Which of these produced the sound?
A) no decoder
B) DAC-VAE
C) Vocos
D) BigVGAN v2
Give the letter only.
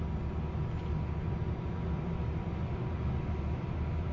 A